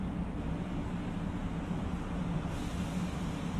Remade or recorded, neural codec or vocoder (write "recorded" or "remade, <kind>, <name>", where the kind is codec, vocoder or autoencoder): recorded